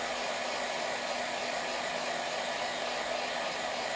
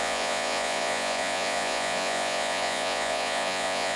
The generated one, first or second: second